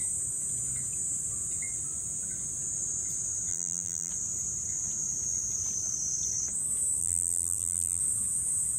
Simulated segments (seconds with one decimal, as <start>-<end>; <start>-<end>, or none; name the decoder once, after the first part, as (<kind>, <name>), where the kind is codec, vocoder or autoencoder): 3.5-4.1 (vocoder, BigVGAN v2); 7.0-8.0